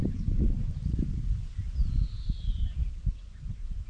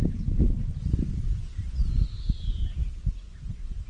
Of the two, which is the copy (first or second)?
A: first